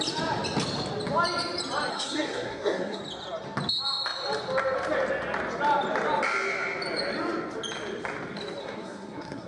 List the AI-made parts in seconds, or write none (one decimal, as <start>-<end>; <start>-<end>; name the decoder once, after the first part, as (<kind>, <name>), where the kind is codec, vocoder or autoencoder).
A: 1.9-3.0 (codec, SNAC); 8.6-9.5